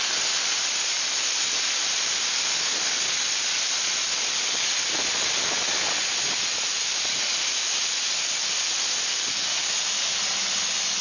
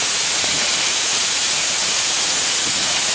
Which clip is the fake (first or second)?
second